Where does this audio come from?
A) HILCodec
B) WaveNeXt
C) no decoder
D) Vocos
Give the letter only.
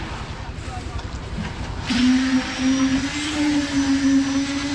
C